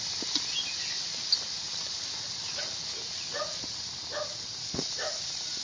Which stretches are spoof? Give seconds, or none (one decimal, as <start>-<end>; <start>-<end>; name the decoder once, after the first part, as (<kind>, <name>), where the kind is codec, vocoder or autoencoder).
1.7-5.1 (vocoder, BigVGAN v2)